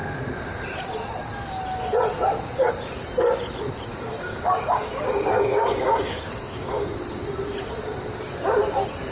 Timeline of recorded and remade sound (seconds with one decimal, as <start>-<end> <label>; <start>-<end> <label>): 0.0-3.9 recorded; 3.9-6.9 remade; 6.9-9.1 recorded